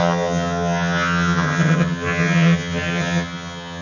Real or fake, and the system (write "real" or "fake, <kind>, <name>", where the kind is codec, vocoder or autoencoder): fake, vocoder, HiFi-GAN